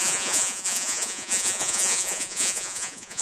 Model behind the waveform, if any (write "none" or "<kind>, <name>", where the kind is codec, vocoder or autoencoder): vocoder, Vocos